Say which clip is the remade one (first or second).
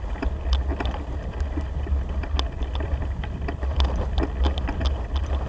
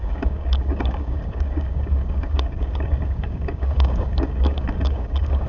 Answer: second